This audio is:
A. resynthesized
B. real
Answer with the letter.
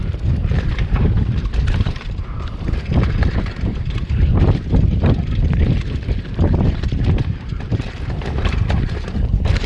A